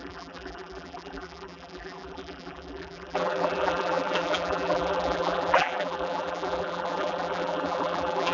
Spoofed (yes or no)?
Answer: yes